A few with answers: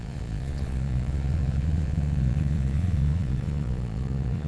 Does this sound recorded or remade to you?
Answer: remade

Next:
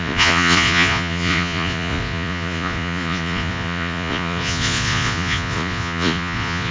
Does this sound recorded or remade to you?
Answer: remade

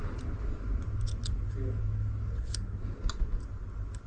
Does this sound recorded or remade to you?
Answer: recorded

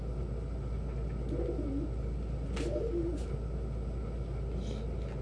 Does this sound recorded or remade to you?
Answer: recorded